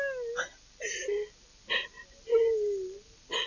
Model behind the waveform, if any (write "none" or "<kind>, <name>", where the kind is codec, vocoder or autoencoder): none